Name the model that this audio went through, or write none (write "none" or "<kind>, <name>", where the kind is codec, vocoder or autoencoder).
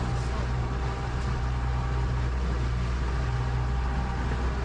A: none